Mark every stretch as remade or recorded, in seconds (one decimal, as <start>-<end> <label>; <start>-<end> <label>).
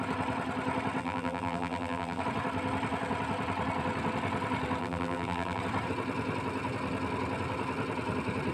0.0-1.0 recorded; 1.0-2.2 remade; 2.2-4.8 recorded; 4.8-5.6 remade; 5.6-8.5 recorded